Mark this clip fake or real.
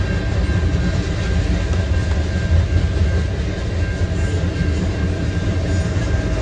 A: real